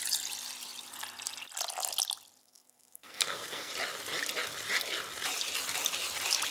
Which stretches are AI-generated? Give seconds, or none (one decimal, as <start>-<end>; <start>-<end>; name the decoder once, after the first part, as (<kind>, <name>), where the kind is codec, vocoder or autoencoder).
2.4-3.7 (codec, SNAC)